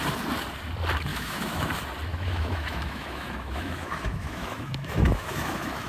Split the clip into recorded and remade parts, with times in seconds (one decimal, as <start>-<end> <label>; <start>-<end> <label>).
0.0-1.1 recorded; 1.1-1.7 remade; 1.7-2.1 recorded; 2.1-5.9 remade